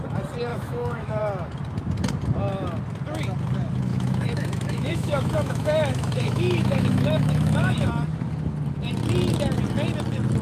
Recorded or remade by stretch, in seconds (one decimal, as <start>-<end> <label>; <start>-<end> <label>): 0.0-0.5 recorded; 0.5-1.2 remade; 1.2-3.9 recorded; 3.9-7.9 remade; 7.9-10.4 recorded